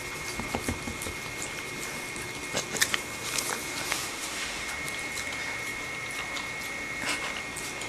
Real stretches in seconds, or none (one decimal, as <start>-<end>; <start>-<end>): 0.0-3.9; 4.7-7.9